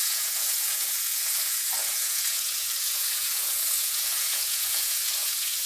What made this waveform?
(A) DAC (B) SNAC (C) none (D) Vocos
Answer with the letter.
D